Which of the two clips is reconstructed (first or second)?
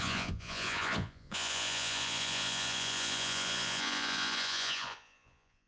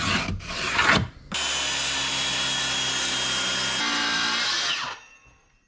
first